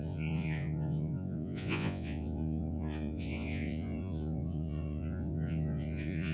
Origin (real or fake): fake